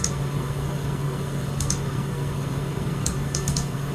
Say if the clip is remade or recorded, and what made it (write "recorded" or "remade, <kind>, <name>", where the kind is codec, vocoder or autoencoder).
remade, codec, SNAC